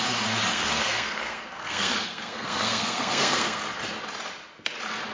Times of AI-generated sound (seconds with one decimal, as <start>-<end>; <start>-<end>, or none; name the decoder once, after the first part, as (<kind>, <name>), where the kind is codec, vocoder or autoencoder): 0.5-3.6 (codec, SNAC)

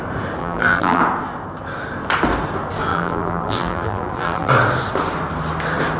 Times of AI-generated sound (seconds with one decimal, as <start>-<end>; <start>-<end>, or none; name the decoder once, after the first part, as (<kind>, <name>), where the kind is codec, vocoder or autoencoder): 0.4-1.0 (vocoder, BigVGAN v2); 2.9-4.5

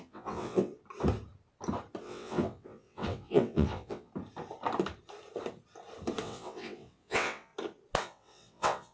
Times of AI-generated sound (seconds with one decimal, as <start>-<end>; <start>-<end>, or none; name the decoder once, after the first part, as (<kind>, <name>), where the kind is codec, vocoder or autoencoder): 0.0-0.7 (vocoder, WaveNeXt); 2.0-4.1; 6.2-7.5; 8.0-8.9

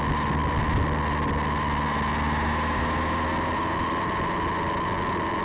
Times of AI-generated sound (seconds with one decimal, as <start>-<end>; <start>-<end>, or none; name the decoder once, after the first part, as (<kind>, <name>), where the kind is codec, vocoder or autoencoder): none